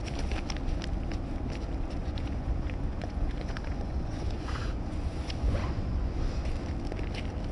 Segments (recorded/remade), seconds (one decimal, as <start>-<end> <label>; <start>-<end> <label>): 0.0-2.0 recorded; 2.0-6.5 remade; 6.5-7.5 recorded